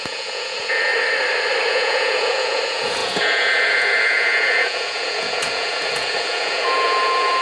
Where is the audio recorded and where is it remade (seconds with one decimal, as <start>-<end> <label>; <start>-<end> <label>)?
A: 0.0-0.9 remade; 0.9-1.7 recorded; 1.7-7.4 remade

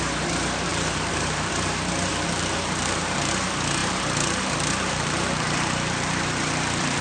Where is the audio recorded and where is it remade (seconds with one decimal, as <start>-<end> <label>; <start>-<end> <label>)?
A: 0.0-0.7 recorded; 0.7-1.5 remade; 1.5-2.1 recorded; 2.1-3.3 remade; 3.3-3.8 recorded; 3.8-7.0 remade

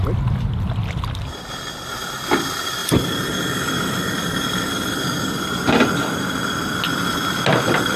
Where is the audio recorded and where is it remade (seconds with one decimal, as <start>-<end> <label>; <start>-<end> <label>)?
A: 0.0-8.0 recorded

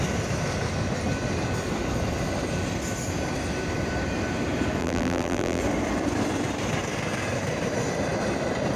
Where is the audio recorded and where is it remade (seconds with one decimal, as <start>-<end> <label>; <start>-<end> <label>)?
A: 0.0-4.8 recorded; 4.8-5.6 remade; 5.6-8.8 recorded

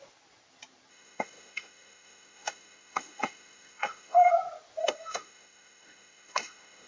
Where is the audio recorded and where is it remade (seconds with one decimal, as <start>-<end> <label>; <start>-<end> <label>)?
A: 0.0-0.9 recorded; 0.9-4.3 remade; 4.3-4.8 recorded; 4.8-6.9 remade